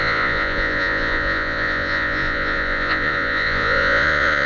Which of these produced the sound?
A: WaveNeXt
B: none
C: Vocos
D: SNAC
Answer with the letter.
C